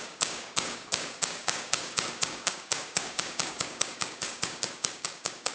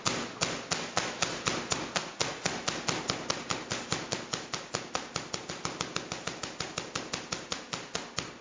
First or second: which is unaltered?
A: second